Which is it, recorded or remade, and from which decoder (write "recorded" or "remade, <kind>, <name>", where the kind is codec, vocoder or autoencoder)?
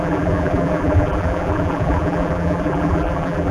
remade, vocoder, BigVGAN v2